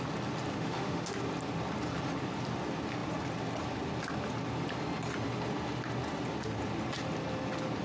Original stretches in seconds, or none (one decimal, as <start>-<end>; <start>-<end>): 0.0-0.5; 1.1-7.8

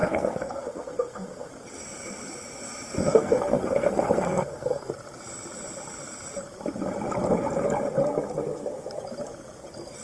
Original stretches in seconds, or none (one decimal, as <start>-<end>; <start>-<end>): 1.5-3.0; 4.9-10.0

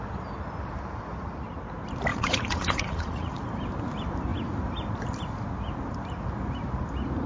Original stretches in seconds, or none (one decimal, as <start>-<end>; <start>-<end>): 0.0-2.1; 3.4-7.3

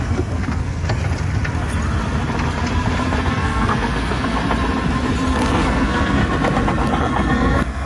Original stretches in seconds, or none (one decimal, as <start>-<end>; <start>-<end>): 1.0-3.3; 4.4-5.3; 6.2-7.0

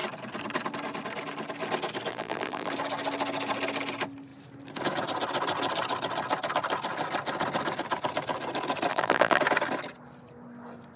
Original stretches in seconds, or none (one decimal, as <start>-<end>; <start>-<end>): 0.0-2.1; 2.7-8.9; 9.4-11.0

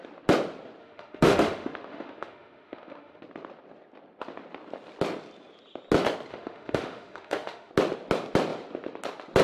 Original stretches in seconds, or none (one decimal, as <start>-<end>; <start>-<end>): 0.0-0.8; 3.2-6.3; 7.7-9.4